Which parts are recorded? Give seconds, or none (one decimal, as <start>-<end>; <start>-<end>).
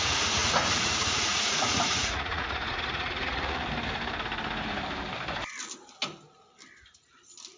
3.6-7.6